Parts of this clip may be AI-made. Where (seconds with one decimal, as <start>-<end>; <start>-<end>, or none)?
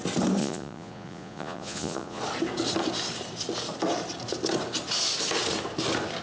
0.4-2.2